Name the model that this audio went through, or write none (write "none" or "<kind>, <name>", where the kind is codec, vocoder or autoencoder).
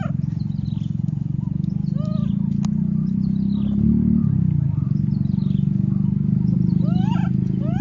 none